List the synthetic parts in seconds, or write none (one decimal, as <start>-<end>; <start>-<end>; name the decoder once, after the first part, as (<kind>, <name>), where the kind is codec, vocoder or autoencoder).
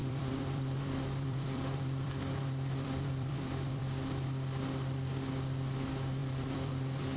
0.0-3.8 (vocoder, BigVGAN v2); 6.2-7.2